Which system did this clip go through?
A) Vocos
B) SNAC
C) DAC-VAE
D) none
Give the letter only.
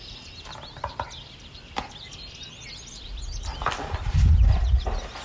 D